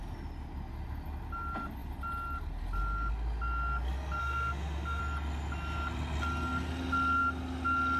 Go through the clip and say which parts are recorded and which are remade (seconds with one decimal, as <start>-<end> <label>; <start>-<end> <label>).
0.0-4.2 recorded; 4.2-5.0 remade; 5.0-8.0 recorded